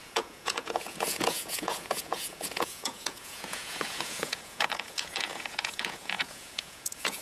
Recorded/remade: remade